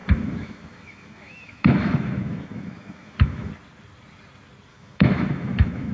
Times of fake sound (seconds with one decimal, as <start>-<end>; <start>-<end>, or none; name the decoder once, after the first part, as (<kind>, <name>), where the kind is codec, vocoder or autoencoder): 0.0-3.5 (autoencoder, DAC-VAE); 4.7-5.9